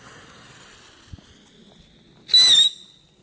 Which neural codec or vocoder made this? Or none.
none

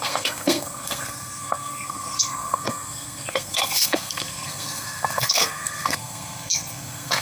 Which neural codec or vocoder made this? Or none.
codec, SNAC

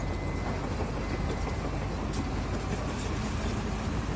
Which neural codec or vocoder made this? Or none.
none